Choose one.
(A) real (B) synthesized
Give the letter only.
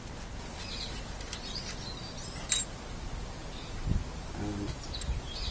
A